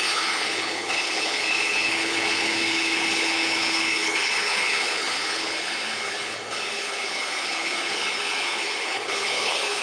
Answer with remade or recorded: remade